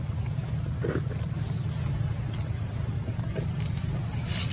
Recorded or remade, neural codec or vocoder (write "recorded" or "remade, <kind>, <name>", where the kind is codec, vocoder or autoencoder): recorded